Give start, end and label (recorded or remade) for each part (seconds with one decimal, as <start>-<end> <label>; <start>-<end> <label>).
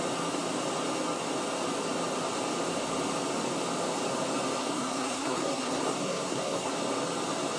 0.0-4.6 recorded; 4.6-6.7 remade; 6.7-7.6 recorded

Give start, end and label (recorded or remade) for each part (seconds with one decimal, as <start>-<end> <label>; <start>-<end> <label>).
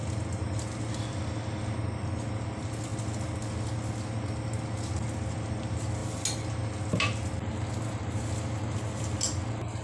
0.0-9.8 recorded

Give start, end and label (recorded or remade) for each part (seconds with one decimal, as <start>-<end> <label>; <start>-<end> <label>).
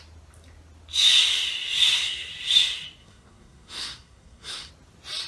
0.0-1.8 recorded; 1.8-2.3 remade; 2.3-3.0 recorded; 3.0-4.7 remade; 4.7-5.3 recorded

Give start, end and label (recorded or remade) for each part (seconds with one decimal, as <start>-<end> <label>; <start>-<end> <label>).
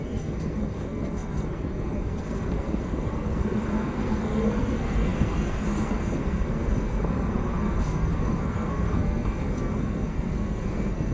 0.0-11.1 remade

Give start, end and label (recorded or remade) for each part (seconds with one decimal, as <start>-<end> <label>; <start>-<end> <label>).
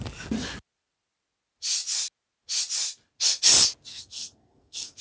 0.0-3.9 recorded; 3.9-5.0 remade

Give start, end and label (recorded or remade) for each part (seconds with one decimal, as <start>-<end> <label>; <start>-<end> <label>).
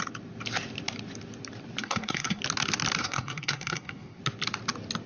0.0-1.8 recorded; 1.8-2.4 remade; 2.4-3.0 recorded; 3.0-4.2 remade; 4.2-5.1 recorded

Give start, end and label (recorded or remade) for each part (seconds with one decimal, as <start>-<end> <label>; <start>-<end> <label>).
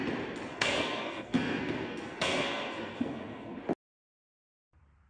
0.0-0.5 recorded; 0.5-3.6 remade; 3.6-5.1 recorded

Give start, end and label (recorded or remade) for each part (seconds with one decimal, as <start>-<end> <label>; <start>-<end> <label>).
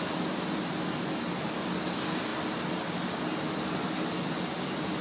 0.0-5.0 recorded